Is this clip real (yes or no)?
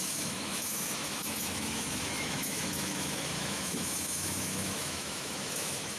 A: no